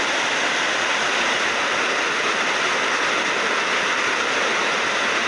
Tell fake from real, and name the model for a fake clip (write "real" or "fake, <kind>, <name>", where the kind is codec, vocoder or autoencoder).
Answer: real